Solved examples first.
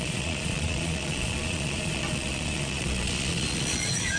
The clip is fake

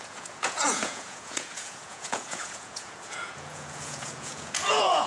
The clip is fake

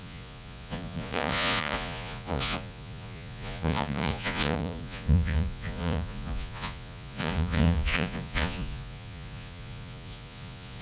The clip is fake